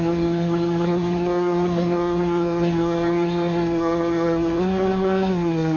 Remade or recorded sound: remade